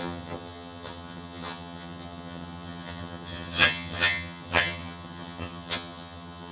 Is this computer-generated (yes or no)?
yes